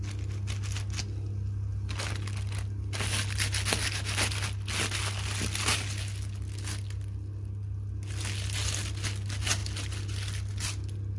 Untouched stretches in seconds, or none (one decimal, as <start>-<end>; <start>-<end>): 0.0-11.2